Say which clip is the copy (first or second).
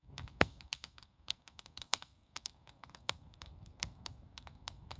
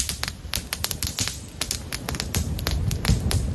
first